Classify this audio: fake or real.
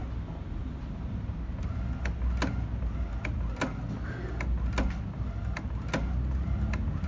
real